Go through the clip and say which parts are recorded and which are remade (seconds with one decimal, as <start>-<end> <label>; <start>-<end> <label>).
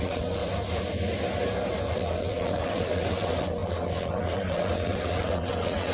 0.0-0.4 remade; 0.4-1.9 recorded; 1.9-5.9 remade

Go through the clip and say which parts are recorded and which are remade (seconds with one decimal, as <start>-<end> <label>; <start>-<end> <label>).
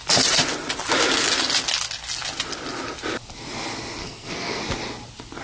0.0-4.0 recorded; 4.0-4.6 remade; 4.6-5.4 recorded